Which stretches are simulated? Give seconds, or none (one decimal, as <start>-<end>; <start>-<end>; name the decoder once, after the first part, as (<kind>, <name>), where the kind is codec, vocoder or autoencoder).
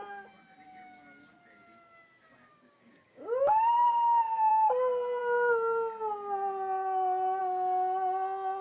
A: 2.5-4.5 (codec, DAC)